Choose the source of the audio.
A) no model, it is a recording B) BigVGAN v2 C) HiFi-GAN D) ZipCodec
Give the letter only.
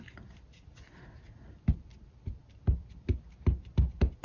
A